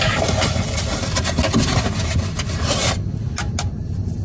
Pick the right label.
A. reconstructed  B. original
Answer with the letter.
B